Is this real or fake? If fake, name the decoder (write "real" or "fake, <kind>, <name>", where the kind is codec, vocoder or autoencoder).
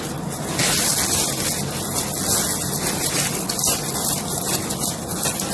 real